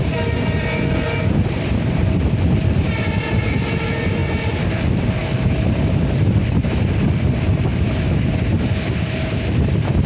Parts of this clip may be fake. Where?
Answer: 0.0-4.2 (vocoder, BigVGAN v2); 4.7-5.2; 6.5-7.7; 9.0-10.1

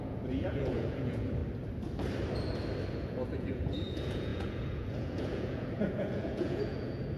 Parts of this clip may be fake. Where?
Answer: 0.0-1.4 (vocoder, Vocos); 2.9-7.2

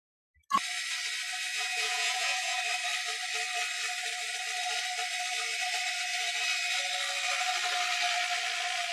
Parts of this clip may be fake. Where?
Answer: 1.5-2.6 (vocoder, Vocos)

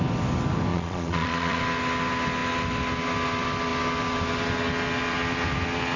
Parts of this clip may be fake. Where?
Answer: 0.7-1.6 (vocoder, Vocos)